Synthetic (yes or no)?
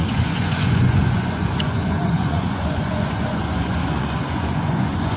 yes